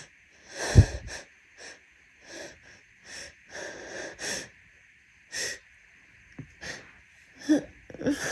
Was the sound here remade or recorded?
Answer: recorded